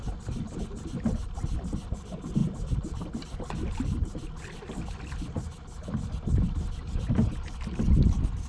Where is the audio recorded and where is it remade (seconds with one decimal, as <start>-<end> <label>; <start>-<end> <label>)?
0.0-8.5 recorded